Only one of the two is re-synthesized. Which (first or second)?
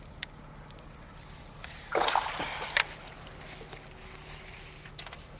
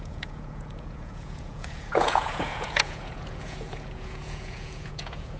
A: second